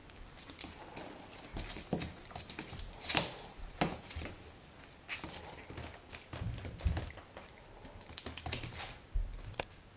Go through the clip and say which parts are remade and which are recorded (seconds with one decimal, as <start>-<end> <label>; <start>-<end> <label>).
0.0-10.0 recorded